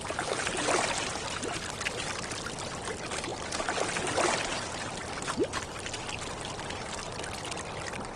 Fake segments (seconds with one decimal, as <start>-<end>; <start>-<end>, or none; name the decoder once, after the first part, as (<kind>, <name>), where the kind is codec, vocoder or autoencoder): none